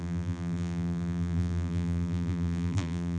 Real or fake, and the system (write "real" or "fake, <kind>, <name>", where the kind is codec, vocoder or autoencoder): fake, vocoder, BigVGAN v2